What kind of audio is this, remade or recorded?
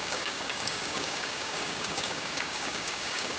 remade